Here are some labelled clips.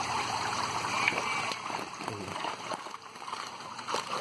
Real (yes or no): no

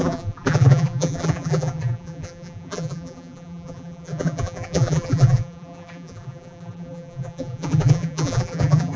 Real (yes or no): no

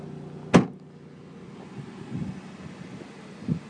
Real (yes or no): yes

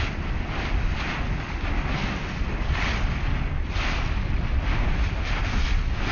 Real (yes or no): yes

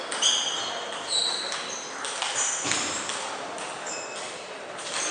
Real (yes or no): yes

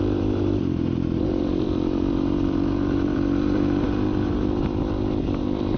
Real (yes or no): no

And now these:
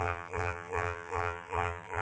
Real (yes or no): no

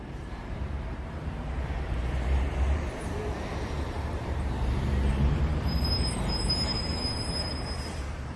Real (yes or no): no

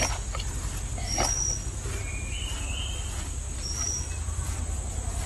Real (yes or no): yes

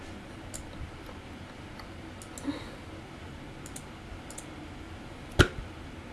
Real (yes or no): yes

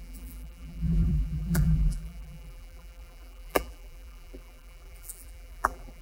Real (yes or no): no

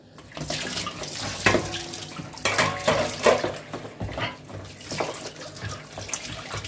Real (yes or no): yes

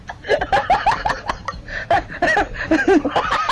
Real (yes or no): no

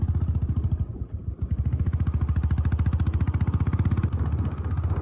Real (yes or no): yes